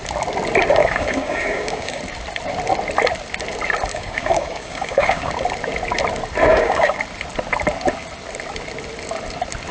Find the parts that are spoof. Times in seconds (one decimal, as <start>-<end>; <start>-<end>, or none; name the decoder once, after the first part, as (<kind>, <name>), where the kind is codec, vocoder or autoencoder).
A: 0.8-2.0 (codec, DAC); 3.9-5.3; 6.5-7.0